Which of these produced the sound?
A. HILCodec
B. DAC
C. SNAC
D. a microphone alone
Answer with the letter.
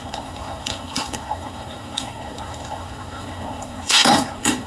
C